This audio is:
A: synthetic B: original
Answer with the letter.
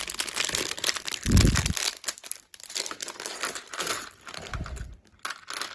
B